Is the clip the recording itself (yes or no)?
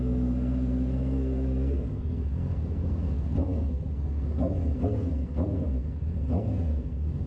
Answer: no